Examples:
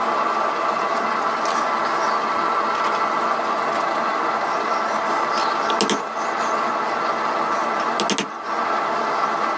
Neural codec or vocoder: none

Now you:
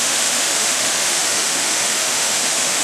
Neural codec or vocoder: autoencoder, DAC-VAE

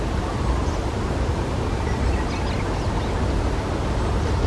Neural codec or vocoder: none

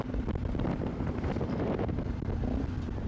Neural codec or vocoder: vocoder, BigVGAN v2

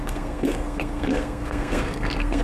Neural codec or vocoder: codec, SNAC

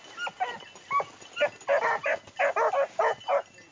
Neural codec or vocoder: none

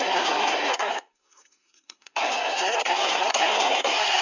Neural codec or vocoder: codec, SNAC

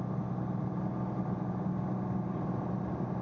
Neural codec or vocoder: none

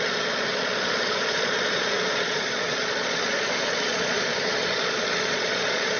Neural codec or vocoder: vocoder, Vocos